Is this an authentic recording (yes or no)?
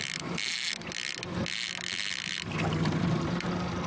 yes